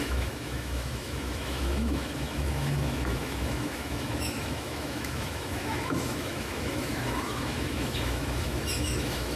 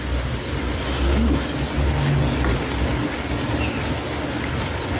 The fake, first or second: first